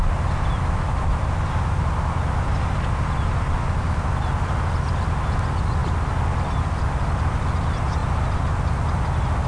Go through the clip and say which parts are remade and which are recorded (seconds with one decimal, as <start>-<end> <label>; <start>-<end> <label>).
0.0-9.5 recorded